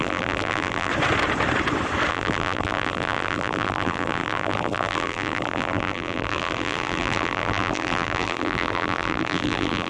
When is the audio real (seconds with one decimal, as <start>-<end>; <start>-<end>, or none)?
0.9-2.1

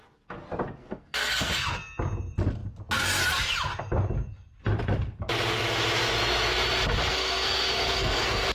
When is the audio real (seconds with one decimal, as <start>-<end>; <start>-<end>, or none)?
0.0-0.8; 1.7-7.0

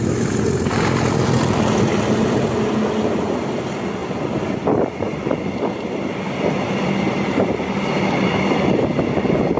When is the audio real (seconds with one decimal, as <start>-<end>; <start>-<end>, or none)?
0.0-9.6

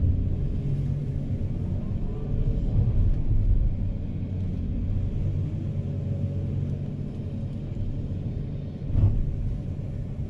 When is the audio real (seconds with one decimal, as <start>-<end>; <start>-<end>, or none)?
0.0-10.3

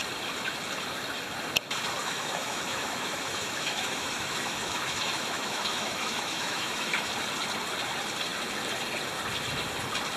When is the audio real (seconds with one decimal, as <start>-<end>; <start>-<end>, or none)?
0.0-2.0; 7.1-10.2

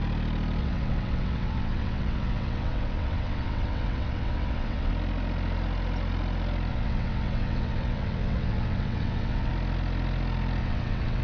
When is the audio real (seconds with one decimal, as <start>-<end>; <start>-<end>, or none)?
0.0-0.6; 4.9-6.7; 9.5-10.6

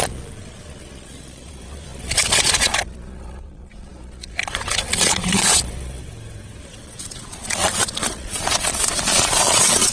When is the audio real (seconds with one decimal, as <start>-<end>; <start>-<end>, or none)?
6.0-6.6

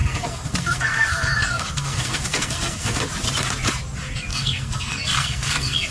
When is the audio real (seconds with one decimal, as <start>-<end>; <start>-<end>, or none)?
3.0-4.3